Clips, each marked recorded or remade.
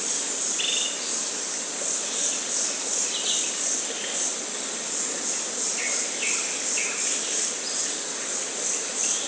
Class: recorded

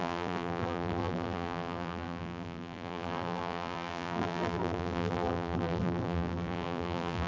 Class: remade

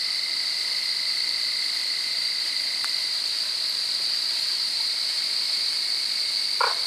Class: recorded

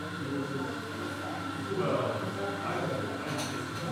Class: recorded